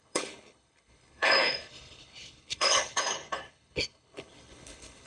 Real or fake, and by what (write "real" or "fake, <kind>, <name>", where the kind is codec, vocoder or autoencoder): fake, codec, HILCodec